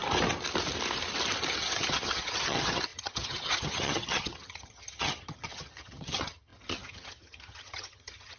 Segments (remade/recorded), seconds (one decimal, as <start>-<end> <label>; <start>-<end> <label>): 0.0-1.5 recorded; 1.5-8.4 remade